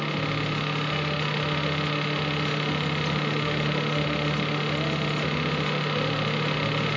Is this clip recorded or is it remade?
recorded